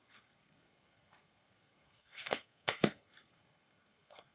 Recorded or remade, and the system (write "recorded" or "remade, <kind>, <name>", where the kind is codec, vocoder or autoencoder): remade, codec, SNAC